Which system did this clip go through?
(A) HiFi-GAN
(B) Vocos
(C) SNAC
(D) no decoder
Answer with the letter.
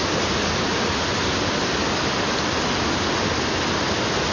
D